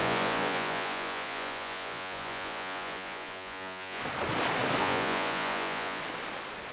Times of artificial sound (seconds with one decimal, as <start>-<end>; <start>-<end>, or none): 0.0-4.0; 4.8-6.0

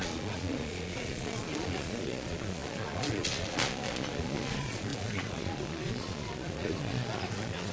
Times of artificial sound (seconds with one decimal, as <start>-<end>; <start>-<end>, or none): 0.0-7.7

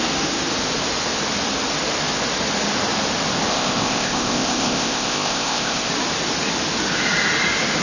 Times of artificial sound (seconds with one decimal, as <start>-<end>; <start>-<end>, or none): 3.5-5.9

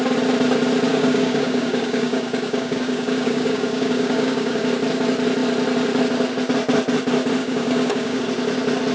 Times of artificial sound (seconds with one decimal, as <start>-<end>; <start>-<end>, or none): 0.9-4.6; 7.4-8.2